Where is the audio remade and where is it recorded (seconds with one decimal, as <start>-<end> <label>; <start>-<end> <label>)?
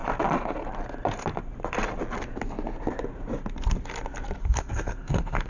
0.0-4.4 recorded; 4.4-5.5 remade